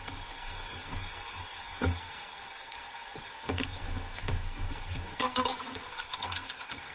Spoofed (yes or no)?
yes